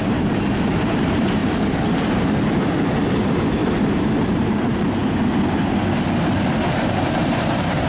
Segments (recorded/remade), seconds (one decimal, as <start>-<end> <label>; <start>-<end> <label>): 0.0-1.4 remade; 1.4-2.2 recorded; 2.2-5.0 remade; 5.0-6.7 recorded; 6.7-7.9 remade